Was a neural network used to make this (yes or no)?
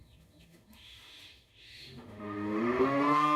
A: yes